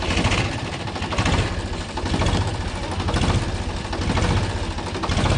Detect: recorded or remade recorded